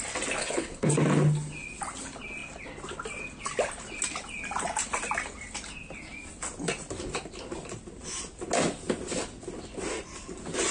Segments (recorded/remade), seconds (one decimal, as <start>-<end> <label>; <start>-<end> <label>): 0.0-0.4 recorded; 0.4-0.9 remade; 0.9-10.7 recorded